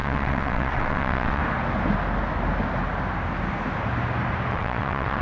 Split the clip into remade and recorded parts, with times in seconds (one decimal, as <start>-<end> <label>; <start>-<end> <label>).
0.0-1.4 remade; 1.4-4.5 recorded; 4.5-5.2 remade